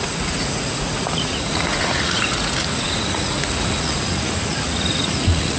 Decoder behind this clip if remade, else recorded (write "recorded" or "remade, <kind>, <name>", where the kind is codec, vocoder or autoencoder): remade, vocoder, Vocos